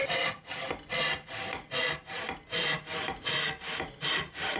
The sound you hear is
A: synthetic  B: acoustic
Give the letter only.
B